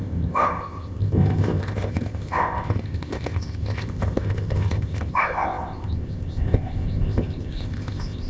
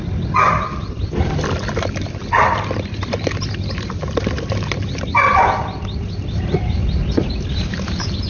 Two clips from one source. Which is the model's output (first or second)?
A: first